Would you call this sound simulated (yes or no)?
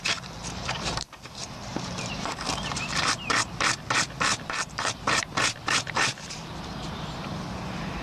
yes